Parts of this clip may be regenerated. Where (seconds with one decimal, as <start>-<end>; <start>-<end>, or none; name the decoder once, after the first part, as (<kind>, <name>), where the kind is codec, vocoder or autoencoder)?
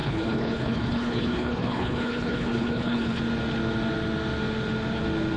0.0-3.2 (codec, HILCodec)